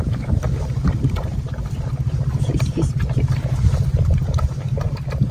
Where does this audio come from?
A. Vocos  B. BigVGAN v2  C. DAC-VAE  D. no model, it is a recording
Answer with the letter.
D